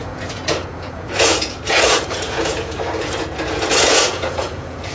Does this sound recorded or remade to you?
remade